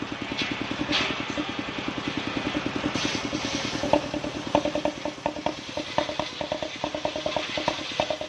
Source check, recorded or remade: recorded